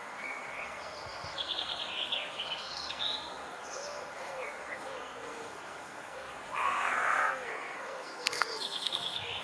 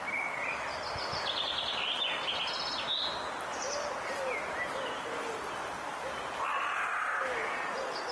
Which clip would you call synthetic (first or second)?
first